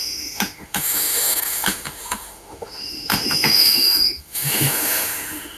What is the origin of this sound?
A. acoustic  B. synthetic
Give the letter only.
B